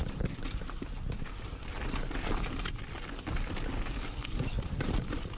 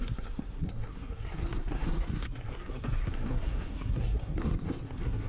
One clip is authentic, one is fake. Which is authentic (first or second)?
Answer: first